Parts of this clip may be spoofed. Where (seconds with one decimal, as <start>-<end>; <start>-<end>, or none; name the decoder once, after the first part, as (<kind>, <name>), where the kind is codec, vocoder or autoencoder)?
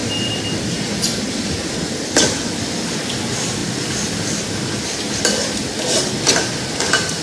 none